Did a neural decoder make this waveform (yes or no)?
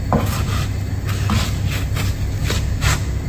no